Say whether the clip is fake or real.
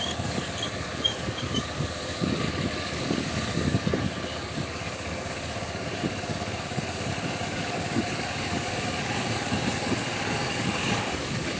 fake